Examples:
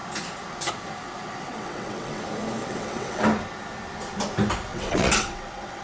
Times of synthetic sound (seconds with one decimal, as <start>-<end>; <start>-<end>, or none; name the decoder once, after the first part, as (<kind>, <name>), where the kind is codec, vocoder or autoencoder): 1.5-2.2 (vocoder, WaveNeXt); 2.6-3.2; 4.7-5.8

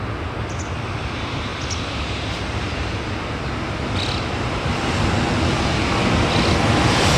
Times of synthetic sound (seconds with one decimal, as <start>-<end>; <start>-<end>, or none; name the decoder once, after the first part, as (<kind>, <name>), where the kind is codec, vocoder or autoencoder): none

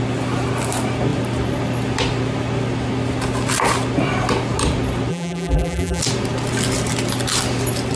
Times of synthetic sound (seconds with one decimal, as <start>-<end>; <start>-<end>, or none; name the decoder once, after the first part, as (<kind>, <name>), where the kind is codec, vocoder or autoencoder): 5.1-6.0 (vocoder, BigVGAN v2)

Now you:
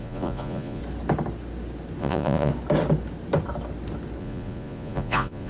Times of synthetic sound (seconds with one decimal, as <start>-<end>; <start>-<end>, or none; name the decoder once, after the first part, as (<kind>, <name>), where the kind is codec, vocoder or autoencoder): 0.0-0.8 (vocoder, Vocos); 2.0-2.5; 4.2-5.5

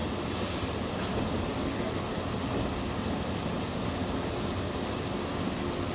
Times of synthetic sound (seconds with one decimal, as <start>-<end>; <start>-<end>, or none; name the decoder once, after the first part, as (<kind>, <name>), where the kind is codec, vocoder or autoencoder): 0.0-1.1 (vocoder, BigVGAN v2)

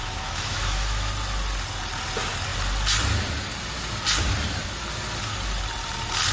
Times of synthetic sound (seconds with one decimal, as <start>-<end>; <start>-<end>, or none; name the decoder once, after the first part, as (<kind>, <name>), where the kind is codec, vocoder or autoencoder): 0.0-1.1 (autoencoder, DAC-VAE)

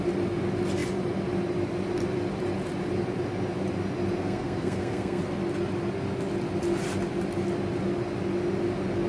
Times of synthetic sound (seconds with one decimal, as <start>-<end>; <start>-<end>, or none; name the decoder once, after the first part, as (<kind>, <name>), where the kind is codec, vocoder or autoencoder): 4.2-5.2 (codec, SNAC)